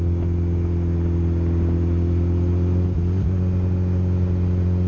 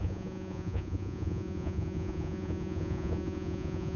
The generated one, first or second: second